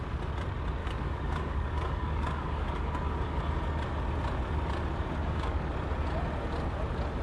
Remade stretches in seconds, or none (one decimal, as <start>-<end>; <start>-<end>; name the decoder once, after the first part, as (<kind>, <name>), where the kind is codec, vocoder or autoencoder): 0.8-3.4 (codec, DAC); 5.2-5.7